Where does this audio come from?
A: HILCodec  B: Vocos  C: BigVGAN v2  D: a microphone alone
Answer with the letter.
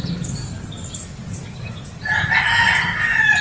D